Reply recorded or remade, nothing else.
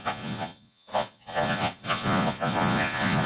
remade